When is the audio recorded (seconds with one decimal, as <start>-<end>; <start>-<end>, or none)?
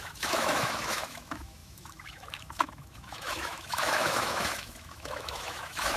none